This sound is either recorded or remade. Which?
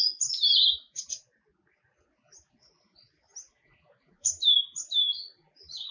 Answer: recorded